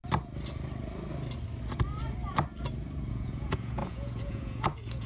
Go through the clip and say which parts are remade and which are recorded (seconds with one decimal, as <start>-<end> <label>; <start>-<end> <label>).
0.0-3.1 recorded; 3.1-5.1 remade